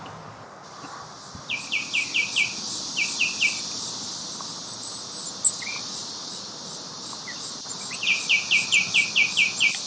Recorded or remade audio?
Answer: recorded